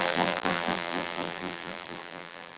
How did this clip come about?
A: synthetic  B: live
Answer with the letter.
A